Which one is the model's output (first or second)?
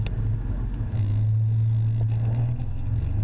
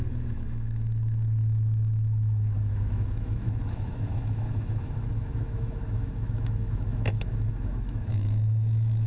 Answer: second